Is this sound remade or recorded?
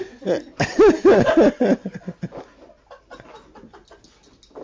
recorded